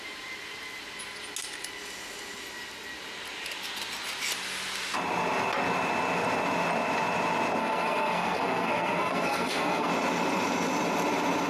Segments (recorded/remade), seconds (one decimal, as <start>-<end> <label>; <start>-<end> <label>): 0.0-7.6 recorded; 7.6-9.9 remade; 9.9-11.5 recorded